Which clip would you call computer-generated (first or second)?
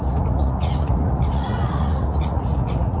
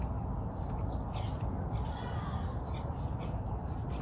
first